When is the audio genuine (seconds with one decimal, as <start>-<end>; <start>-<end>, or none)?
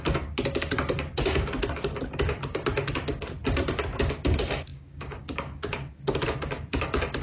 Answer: 0.0-4.7; 5.9-7.2